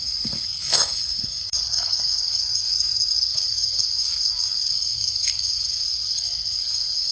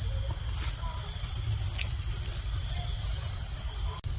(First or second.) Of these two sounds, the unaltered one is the second